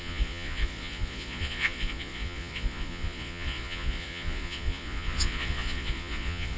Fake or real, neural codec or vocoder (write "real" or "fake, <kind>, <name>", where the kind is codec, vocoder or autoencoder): fake, vocoder, Vocos